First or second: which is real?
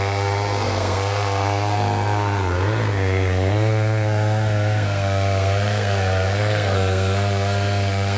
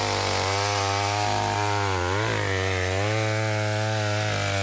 second